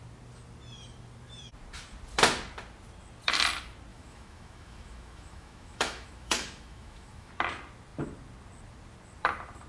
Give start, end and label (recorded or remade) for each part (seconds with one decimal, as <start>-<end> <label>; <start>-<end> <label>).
0.0-3.9 recorded; 3.9-7.3 remade; 7.3-9.7 recorded